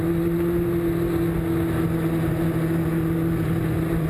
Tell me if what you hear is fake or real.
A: real